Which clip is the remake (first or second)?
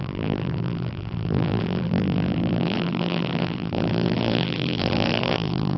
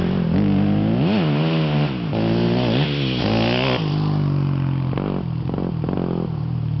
first